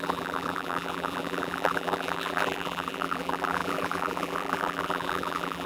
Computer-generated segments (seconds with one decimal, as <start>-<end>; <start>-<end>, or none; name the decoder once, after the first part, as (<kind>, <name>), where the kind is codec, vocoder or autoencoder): 0.0-5.7 (vocoder, BigVGAN v2)